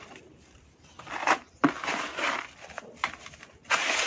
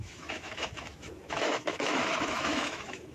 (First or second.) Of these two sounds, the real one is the first